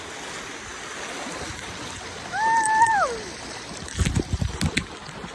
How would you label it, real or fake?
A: real